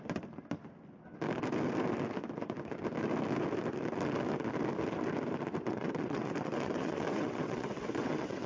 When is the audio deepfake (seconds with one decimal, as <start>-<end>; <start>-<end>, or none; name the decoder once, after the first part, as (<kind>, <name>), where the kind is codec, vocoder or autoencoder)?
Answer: 5.7-8.5 (vocoder, WaveNeXt)